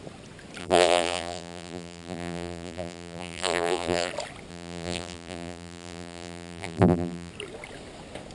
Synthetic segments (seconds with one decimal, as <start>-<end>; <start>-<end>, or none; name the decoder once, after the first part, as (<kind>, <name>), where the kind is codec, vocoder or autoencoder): 0.6-4.1 (vocoder, BigVGAN v2); 4.5-7.3